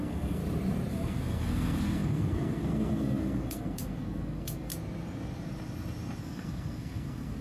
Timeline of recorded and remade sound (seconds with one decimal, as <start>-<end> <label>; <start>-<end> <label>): 0.0-0.4 remade; 0.4-0.9 recorded; 0.9-4.7 remade; 4.7-6.2 recorded; 6.2-7.4 remade

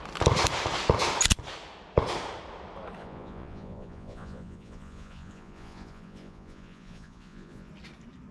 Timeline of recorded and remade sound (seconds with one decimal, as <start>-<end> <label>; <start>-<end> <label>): 0.0-3.0 recorded; 3.0-7.7 remade; 7.7-8.3 recorded

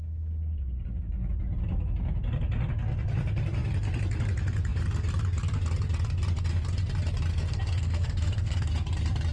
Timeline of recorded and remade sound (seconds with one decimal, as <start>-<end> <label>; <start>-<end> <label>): 0.0-7.3 recorded; 7.3-8.7 remade; 8.7-9.3 recorded

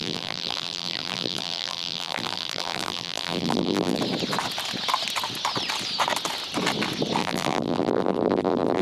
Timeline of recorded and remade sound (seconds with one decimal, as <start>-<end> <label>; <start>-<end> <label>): 0.0-4.0 remade; 4.0-7.2 recorded; 7.2-8.8 remade

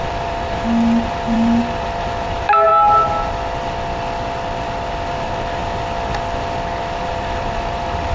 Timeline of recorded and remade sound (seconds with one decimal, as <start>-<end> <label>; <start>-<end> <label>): 0.0-2.7 remade; 2.7-5.1 recorded; 5.1-5.6 remade; 5.6-7.0 recorded; 7.0-8.1 remade

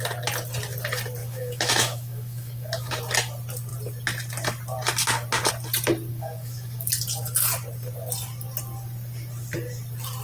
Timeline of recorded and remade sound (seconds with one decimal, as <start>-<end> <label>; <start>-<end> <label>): 0.0-1.2 recorded; 1.2-2.9 remade; 2.9-6.1 recorded; 6.1-6.9 remade; 6.9-10.2 recorded